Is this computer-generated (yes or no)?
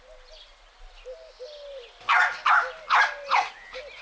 no